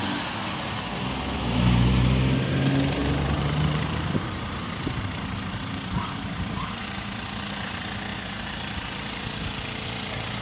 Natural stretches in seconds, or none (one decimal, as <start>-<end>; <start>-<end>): 0.0-3.0; 6.7-8.1; 8.9-10.4